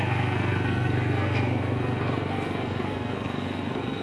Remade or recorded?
remade